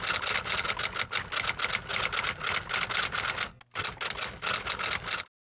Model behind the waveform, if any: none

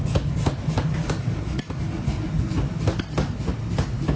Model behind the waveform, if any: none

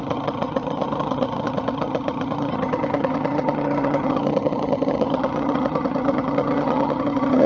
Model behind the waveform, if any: vocoder, HiFi-GAN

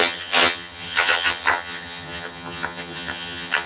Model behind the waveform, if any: vocoder, HiFi-GAN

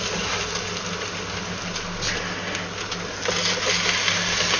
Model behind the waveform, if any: none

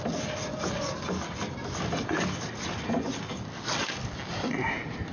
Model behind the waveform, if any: none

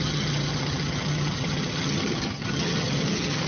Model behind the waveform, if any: vocoder, HiFi-GAN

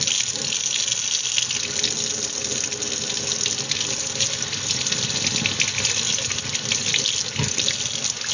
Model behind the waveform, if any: none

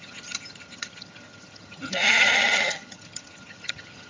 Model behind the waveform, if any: vocoder, HiFi-GAN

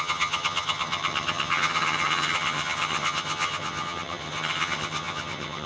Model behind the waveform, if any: vocoder, HiFi-GAN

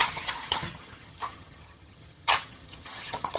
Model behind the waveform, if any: vocoder, HiFi-GAN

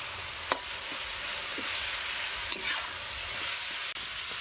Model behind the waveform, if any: none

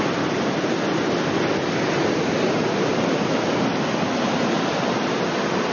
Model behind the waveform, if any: none